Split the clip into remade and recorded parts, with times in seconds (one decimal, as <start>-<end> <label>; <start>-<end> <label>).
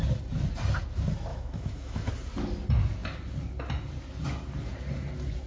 0.0-1.3 recorded; 1.3-2.1 remade; 2.1-5.5 recorded